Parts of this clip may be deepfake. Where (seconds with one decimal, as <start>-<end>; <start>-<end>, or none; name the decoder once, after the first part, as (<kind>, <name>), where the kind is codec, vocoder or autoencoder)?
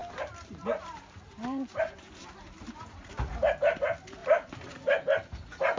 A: 0.0-3.5 (vocoder, BigVGAN v2); 4.2-4.8